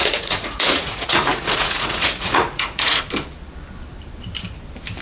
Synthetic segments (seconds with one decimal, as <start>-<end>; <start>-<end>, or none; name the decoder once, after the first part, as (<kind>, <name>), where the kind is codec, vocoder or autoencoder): 0.0-3.0 (vocoder, Vocos)